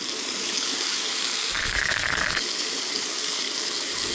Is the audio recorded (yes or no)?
no